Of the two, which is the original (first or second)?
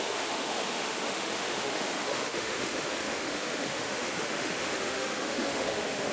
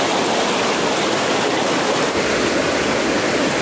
second